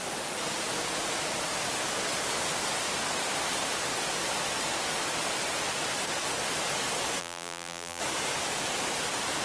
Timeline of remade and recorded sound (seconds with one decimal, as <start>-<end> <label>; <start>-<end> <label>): 0.0-7.2 recorded; 7.2-8.0 remade; 8.0-9.4 recorded